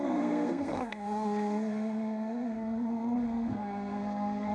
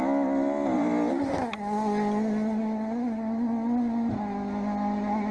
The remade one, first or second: first